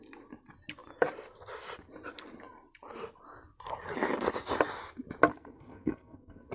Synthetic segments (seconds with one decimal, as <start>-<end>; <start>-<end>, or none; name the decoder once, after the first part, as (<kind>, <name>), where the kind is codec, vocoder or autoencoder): 5.3-6.5 (codec, SNAC)